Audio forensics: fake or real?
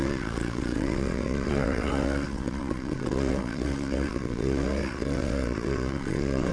fake